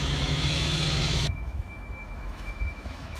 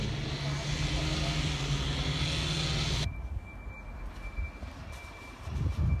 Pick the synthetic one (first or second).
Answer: first